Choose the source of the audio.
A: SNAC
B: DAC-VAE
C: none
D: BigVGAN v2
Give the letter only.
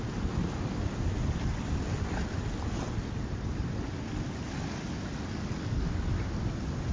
C